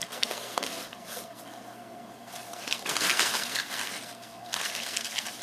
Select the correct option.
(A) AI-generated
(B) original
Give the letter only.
A